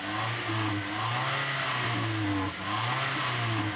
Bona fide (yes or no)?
yes